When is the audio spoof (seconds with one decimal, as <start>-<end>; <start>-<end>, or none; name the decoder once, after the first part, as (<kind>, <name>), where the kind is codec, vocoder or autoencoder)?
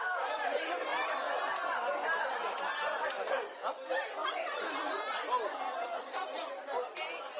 none